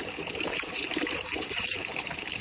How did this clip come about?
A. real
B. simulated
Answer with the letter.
B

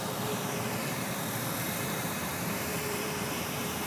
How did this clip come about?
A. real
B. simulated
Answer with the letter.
B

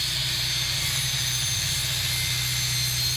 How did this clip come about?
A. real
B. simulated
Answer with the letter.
A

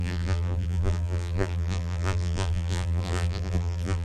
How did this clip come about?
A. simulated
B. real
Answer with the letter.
A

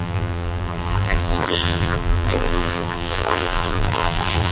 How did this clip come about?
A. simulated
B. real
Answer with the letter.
A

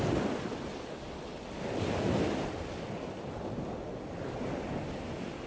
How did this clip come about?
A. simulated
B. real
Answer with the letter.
B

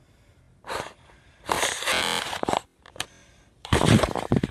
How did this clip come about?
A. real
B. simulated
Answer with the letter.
A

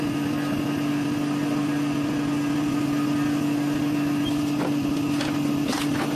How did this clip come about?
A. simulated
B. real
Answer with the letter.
B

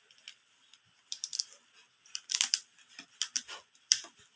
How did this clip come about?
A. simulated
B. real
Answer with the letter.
A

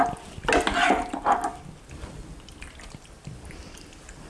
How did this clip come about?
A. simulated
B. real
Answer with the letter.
B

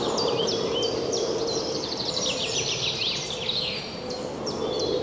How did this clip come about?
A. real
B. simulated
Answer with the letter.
B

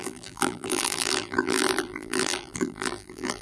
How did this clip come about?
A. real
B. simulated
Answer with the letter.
B